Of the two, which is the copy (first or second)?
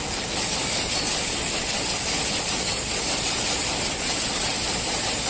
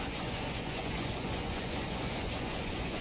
second